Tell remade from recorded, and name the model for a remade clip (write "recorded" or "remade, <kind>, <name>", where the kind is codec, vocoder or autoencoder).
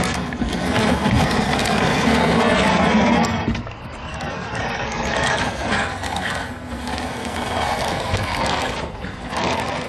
remade, codec, SNAC